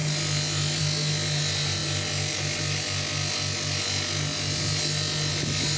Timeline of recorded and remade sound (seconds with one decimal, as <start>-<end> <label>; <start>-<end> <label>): 0.0-5.8 recorded